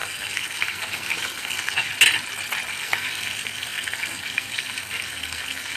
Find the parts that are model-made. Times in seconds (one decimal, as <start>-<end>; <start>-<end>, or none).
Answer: 0.0-1.9; 2.7-5.8